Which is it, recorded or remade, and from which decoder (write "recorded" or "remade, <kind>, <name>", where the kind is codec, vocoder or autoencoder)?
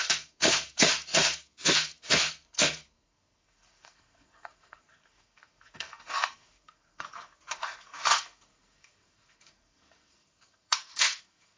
remade, codec, SNAC